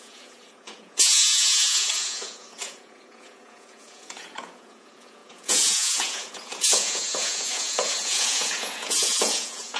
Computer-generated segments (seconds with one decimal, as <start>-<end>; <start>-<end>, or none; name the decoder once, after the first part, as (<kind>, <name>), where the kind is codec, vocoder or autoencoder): 0.0-9.8 (vocoder, Vocos)